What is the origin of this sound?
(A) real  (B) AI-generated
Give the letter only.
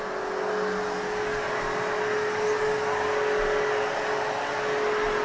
A